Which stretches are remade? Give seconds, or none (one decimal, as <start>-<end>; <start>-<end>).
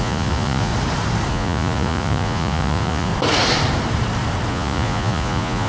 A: 0.0-0.7; 1.3-3.1; 4.5-5.7